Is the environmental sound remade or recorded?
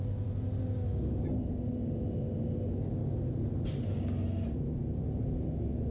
recorded